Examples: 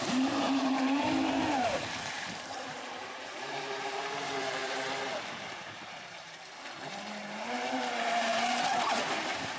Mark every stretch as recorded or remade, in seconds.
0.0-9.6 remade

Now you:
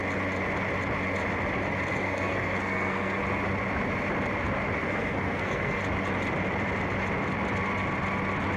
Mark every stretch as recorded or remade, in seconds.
0.0-1.9 recorded; 1.9-3.2 remade; 3.2-4.8 recorded; 4.8-5.8 remade; 5.8-8.6 recorded